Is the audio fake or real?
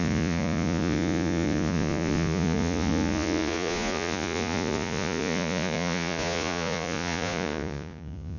fake